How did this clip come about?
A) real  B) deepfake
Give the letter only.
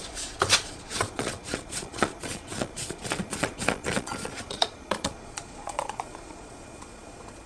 B